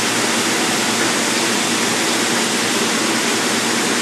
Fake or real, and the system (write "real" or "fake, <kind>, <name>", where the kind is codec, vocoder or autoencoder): real